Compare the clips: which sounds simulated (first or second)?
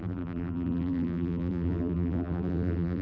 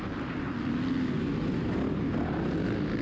first